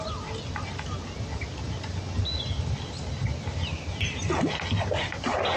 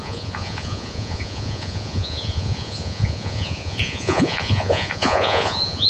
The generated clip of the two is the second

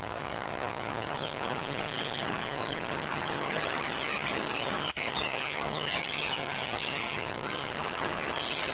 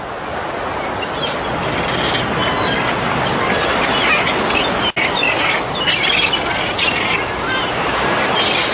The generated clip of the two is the first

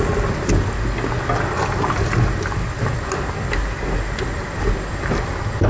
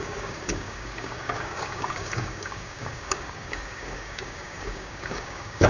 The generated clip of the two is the second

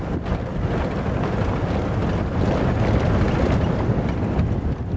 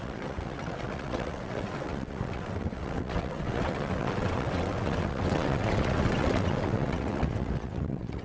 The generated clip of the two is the second